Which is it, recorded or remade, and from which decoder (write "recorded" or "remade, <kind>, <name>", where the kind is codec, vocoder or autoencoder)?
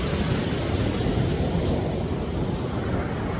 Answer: recorded